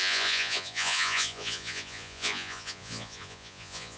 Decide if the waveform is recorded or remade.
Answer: remade